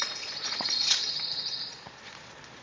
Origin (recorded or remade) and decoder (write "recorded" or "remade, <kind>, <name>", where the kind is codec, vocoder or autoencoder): remade, vocoder, Vocos